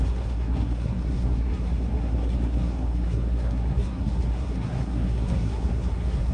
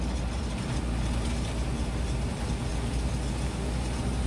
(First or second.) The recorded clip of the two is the second